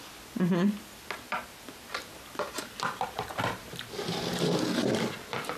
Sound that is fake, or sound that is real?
real